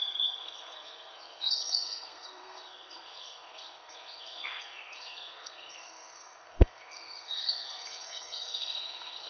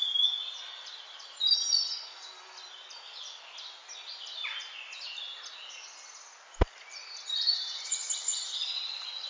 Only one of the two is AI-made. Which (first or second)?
first